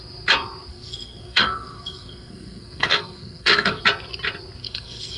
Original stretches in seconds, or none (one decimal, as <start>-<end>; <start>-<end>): 0.0-0.7; 3.8-4.6